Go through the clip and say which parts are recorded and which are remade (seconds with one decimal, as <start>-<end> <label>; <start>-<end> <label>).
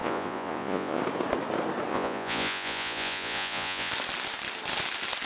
0.0-1.0 remade; 1.0-1.9 recorded; 1.9-3.9 remade; 3.9-5.3 recorded